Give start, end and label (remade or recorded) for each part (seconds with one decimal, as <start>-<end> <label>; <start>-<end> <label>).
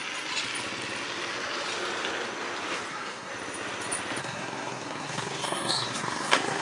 0.0-2.9 recorded; 2.9-3.3 remade; 3.3-4.2 recorded; 4.2-6.6 remade